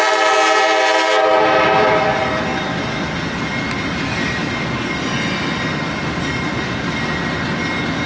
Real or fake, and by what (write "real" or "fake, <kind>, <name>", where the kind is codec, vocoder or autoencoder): real